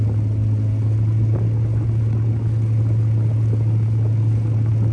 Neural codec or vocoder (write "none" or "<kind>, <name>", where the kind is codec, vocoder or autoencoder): none